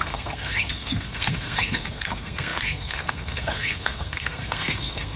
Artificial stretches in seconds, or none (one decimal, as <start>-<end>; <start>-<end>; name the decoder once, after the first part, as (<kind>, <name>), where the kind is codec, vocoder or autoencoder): 0.0-5.2 (codec, SNAC)